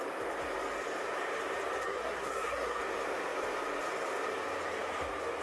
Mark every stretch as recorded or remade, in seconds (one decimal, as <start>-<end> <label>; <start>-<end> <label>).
0.0-1.8 recorded; 1.8-2.8 remade; 2.8-5.4 recorded